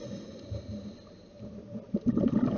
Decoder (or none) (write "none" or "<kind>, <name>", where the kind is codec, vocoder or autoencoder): none